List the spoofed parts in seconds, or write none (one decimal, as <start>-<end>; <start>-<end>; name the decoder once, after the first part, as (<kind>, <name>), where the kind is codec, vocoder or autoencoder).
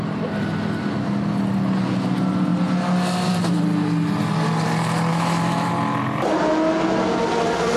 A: 5.1-5.7 (autoencoder, DAC-VAE)